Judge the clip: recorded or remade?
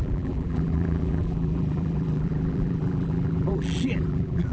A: remade